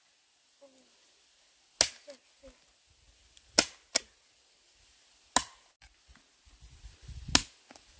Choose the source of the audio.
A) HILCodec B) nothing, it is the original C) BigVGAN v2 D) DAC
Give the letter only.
B